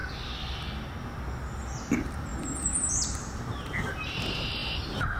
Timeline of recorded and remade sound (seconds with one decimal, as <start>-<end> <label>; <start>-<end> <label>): 0.0-1.9 recorded; 1.9-5.2 remade